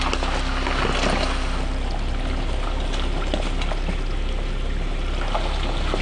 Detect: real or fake real